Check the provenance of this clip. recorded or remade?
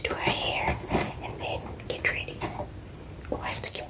recorded